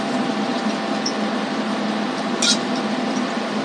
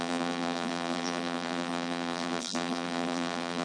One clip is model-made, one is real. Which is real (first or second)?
first